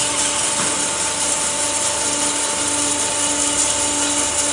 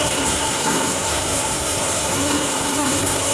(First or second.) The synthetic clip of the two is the second